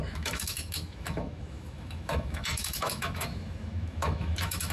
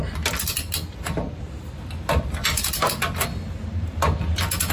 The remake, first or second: first